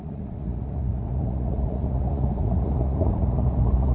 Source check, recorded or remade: remade